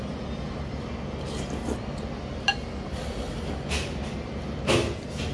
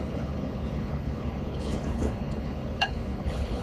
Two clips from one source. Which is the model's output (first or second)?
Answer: second